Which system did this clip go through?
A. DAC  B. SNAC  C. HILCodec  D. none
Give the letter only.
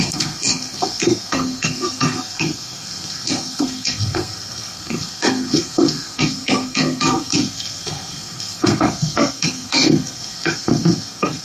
B